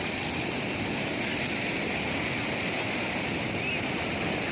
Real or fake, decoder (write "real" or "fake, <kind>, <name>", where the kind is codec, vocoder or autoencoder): real